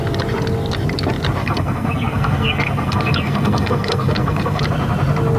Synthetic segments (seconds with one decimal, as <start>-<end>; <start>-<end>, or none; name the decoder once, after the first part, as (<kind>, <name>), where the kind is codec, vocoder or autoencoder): 1.4-4.6 (codec, SNAC)